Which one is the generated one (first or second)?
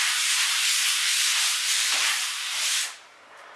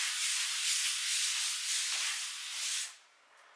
first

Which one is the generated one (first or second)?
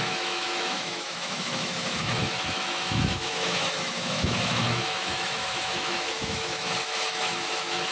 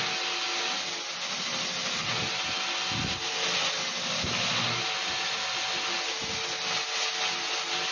first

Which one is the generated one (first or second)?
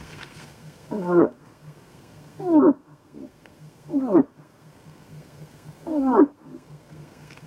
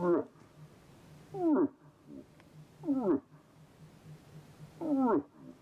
first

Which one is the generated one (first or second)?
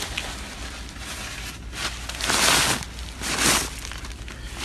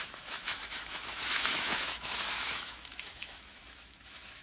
second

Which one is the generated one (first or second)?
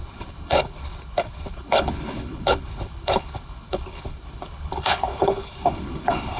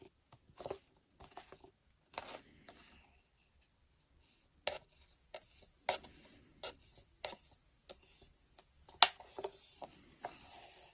first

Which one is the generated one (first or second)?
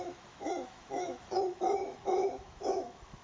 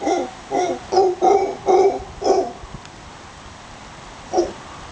first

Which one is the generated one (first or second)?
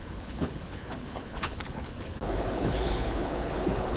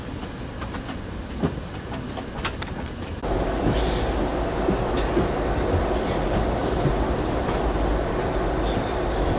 first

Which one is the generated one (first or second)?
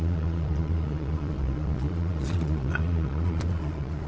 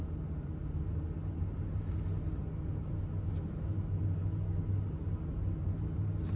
first